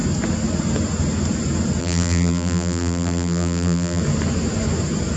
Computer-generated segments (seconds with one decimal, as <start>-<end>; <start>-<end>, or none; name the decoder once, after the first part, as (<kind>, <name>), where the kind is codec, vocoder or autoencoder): 1.8-4.0 (vocoder, BigVGAN v2)